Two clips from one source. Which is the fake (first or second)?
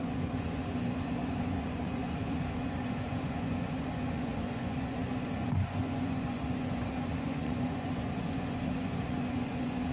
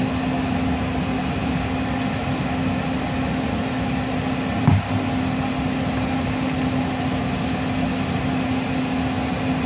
first